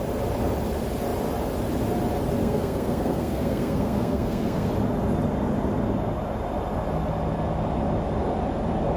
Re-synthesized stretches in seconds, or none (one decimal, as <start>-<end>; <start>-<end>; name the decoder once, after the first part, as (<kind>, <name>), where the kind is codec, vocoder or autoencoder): 2.4-4.7 (codec, SNAC)